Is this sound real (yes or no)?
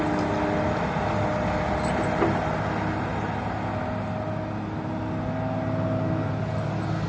yes